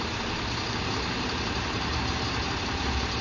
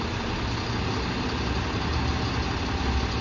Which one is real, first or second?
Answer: second